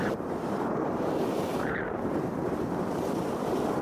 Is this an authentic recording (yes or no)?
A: no